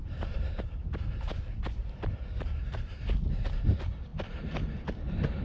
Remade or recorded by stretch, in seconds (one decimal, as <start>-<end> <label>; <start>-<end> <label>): 0.0-1.4 remade; 1.4-1.8 recorded; 1.8-3.0 remade; 3.0-4.1 recorded; 4.1-4.6 remade; 4.6-5.4 recorded